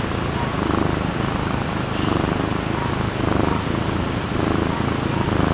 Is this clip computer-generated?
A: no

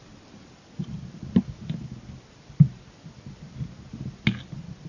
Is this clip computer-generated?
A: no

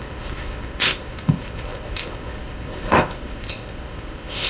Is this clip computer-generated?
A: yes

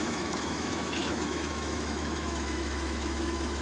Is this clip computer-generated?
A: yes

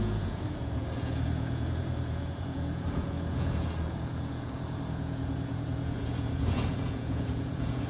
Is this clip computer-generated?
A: yes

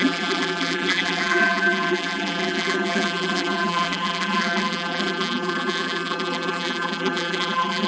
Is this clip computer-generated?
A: yes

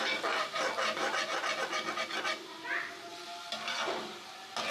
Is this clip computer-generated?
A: no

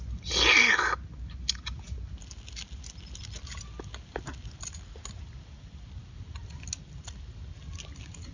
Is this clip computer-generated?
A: no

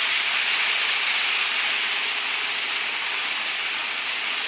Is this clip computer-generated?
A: no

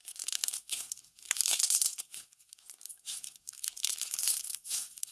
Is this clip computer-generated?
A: yes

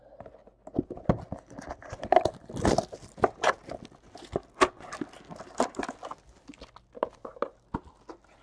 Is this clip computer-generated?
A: no